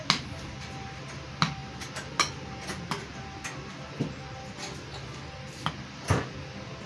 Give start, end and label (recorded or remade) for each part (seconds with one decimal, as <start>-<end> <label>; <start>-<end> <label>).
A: 0.0-6.9 recorded